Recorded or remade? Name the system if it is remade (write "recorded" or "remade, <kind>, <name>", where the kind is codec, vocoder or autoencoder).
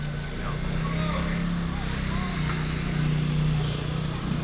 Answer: recorded